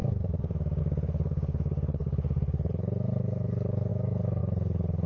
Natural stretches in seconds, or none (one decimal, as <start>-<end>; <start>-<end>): 0.0-0.8